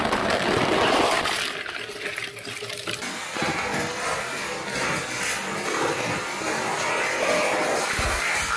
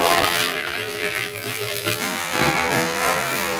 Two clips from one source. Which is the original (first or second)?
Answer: first